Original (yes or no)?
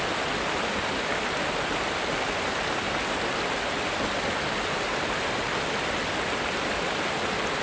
yes